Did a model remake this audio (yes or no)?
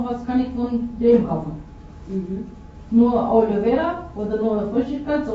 yes